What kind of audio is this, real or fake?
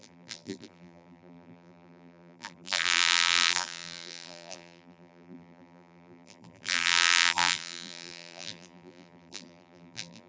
fake